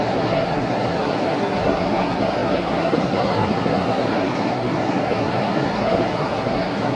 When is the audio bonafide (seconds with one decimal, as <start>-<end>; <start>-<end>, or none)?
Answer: none